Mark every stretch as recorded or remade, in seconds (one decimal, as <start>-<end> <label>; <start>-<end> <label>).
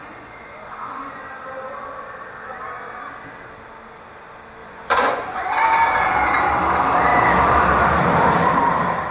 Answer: 0.0-1.2 remade; 1.2-4.6 recorded; 4.6-5.6 remade; 5.6-9.1 recorded